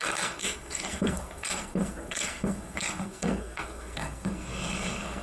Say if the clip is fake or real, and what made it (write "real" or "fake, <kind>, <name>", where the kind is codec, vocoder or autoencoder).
fake, codec, SNAC